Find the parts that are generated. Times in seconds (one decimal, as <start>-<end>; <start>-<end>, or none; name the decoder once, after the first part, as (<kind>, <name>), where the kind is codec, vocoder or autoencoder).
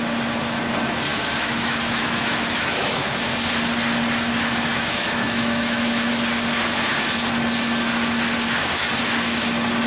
1.1-3.3 (autoencoder, DAC-VAE); 4.7-6.1